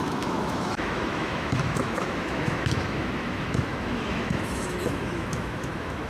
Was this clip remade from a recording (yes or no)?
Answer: yes